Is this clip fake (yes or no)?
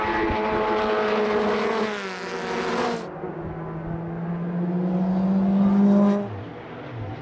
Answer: no